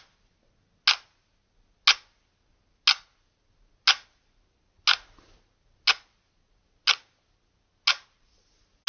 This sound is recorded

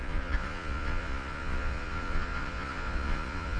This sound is remade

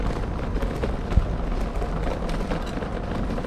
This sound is recorded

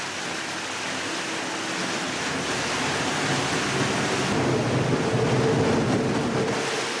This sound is recorded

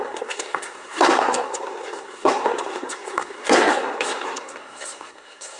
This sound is remade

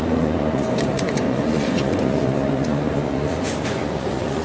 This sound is remade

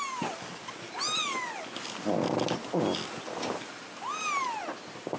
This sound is recorded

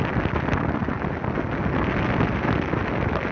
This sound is recorded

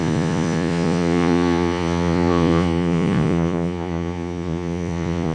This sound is remade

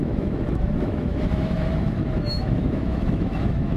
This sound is remade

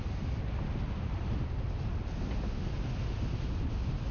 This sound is recorded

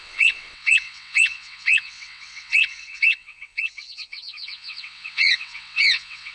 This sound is remade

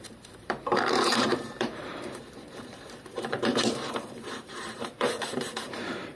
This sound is remade